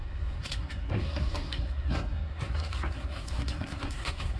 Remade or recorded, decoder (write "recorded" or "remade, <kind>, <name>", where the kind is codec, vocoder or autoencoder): remade, codec, SNAC